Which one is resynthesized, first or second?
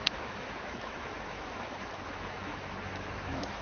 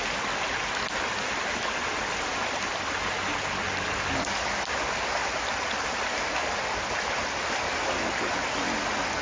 first